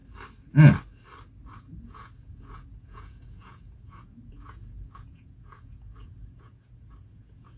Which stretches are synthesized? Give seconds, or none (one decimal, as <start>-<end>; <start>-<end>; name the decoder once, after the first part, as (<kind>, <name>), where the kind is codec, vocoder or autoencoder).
1.6-7.6 (vocoder, Vocos)